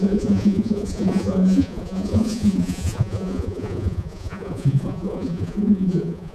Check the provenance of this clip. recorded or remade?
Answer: remade